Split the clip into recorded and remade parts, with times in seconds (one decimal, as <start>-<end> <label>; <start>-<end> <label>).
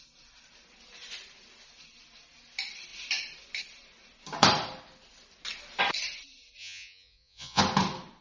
0.0-6.6 recorded; 6.6-7.6 remade; 7.6-8.2 recorded